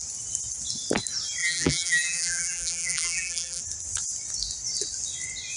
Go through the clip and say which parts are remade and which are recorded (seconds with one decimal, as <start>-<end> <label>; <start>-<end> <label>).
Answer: 0.0-1.4 recorded; 1.4-3.6 remade; 3.6-5.6 recorded